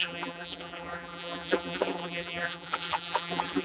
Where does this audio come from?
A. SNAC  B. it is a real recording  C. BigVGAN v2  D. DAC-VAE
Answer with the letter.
C